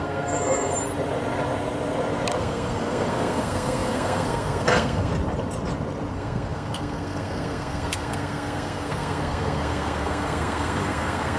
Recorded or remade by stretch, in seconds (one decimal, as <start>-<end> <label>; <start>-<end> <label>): 0.0-0.7 remade; 0.7-2.4 recorded; 2.4-5.1 remade; 5.1-6.1 recorded; 6.1-11.4 remade